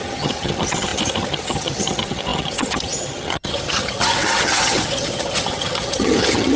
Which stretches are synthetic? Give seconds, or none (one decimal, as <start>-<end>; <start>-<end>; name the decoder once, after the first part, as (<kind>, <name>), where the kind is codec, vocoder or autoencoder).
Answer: 0.0-6.6 (vocoder, HiFi-GAN)